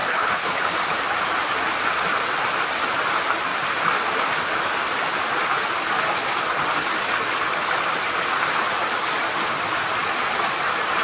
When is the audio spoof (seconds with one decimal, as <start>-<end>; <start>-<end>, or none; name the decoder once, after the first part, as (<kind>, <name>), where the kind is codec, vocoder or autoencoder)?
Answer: 0.0-0.6 (codec, HILCodec)